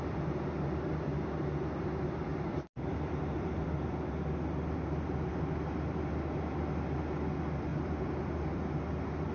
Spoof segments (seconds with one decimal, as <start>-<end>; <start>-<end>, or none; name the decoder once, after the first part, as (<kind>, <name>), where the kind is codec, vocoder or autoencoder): 2.3-4.1 (vocoder, BigVGAN v2); 7.7-8.7